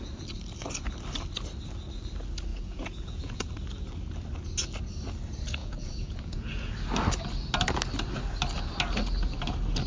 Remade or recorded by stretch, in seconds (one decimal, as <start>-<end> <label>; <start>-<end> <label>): 0.0-2.5 recorded; 2.5-3.5 remade; 3.5-5.6 recorded; 5.6-6.7 remade; 6.7-9.9 recorded